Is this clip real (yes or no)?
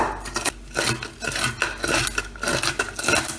yes